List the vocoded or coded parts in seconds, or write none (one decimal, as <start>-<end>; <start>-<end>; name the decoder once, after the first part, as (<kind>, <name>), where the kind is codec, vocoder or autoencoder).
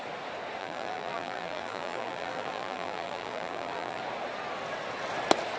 0.6-4.0 (vocoder, BigVGAN v2)